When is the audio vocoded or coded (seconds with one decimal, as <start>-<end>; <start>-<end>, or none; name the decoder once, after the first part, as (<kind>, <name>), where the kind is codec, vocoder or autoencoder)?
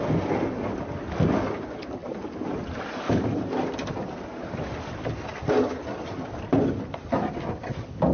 none